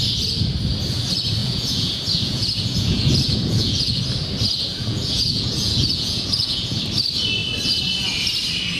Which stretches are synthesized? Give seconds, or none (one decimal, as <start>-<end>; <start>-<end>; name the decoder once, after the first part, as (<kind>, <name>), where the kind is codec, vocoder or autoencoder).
1.4-4.0 (vocoder, Vocos); 4.7-6.8